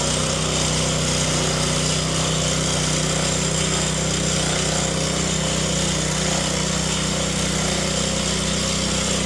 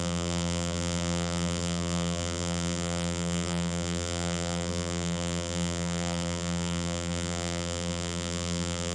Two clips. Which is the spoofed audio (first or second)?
second